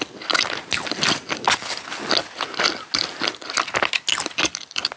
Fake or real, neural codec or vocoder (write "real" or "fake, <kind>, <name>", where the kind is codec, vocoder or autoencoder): real